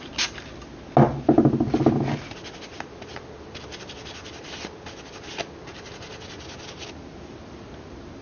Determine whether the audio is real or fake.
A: real